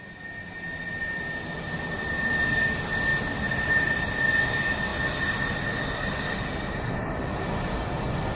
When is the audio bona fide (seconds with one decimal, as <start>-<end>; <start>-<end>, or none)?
0.0-8.4